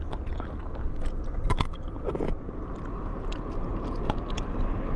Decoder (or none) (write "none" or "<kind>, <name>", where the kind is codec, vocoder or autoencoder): none